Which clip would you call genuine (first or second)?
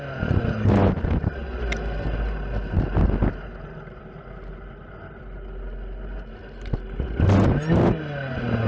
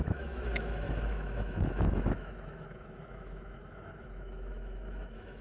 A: first